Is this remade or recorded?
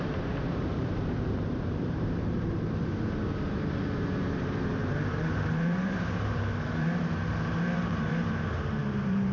remade